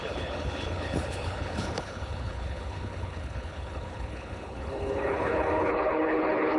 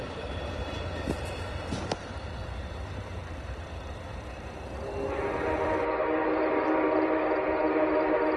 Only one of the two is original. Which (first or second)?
second